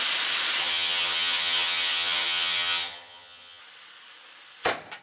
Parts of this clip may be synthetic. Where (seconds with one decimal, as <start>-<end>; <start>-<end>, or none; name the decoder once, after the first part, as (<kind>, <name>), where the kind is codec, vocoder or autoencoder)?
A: 0.6-3.6 (vocoder, HiFi-GAN)